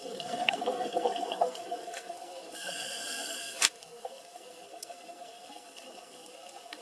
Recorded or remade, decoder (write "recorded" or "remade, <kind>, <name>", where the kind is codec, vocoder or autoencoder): remade, codec, SNAC